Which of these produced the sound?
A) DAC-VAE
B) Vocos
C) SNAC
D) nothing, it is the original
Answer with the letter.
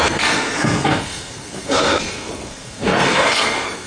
C